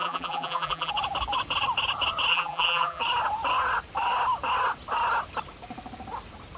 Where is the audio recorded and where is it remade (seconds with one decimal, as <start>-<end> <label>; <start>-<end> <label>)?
0.0-0.9 remade; 0.9-2.3 recorded; 2.3-3.0 remade; 3.0-6.6 recorded